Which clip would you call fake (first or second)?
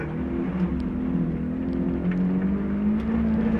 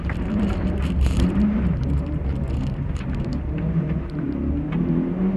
second